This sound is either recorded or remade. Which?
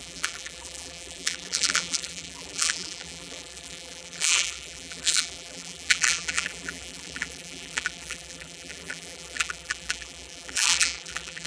remade